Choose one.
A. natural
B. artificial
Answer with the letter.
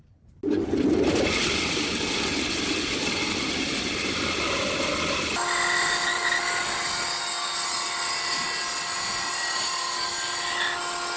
A